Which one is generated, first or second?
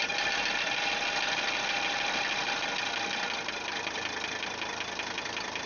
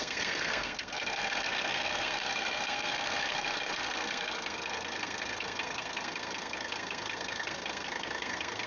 second